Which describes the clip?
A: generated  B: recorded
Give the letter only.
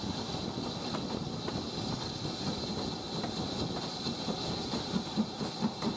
B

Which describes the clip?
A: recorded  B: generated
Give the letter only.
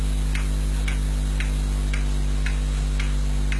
A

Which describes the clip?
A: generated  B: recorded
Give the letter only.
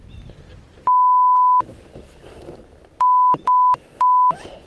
B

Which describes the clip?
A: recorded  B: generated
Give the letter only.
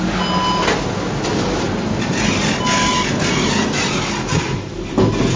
A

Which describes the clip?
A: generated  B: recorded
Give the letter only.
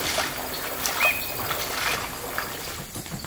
B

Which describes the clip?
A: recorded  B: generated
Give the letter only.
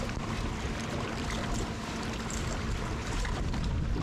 B